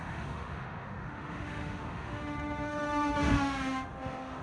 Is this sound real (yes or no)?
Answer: no